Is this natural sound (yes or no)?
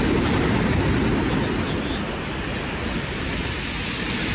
yes